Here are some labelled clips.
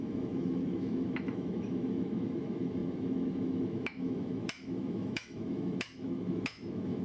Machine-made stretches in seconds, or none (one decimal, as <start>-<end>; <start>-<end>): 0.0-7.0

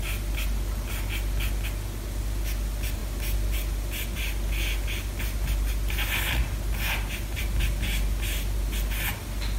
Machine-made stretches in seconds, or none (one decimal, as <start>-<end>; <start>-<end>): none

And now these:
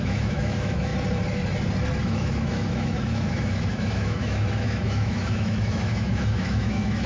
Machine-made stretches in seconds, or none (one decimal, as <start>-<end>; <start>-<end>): 0.0-0.9; 2.0-7.1

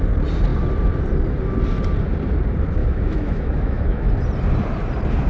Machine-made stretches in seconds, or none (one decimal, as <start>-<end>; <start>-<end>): 2.8-4.1

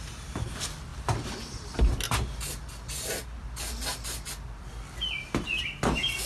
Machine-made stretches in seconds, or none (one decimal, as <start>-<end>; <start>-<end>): none

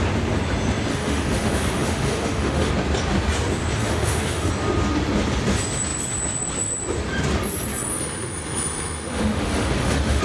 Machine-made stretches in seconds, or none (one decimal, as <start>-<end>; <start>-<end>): 0.9-2.7; 3.8-4.5; 7.9-10.2